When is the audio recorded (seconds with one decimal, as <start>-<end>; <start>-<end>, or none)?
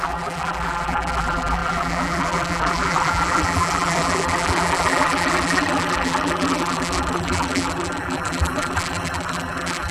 none